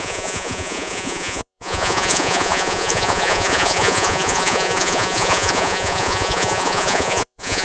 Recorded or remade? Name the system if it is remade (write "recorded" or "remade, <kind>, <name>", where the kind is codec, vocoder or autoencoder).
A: remade, vocoder, Vocos